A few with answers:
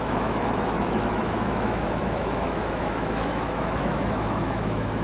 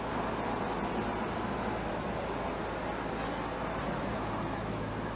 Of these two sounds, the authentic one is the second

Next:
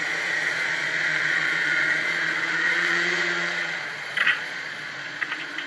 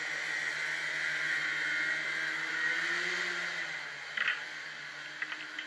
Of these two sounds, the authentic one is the second